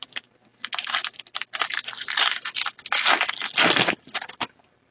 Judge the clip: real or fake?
real